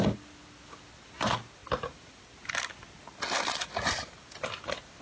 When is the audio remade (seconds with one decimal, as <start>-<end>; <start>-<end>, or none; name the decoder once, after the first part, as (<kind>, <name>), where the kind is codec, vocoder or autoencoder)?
none